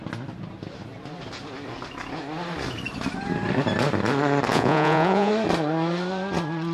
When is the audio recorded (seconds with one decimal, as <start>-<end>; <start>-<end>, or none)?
0.0-4.5; 5.3-6.7